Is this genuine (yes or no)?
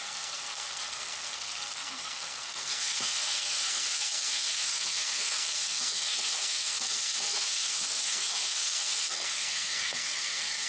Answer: no